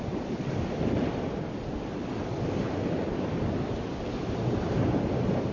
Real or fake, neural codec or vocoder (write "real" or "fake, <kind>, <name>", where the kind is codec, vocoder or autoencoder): real